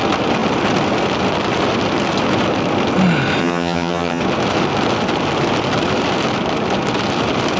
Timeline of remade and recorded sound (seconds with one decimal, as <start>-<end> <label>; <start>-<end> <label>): 0.0-3.4 recorded; 3.4-4.2 remade; 4.2-7.6 recorded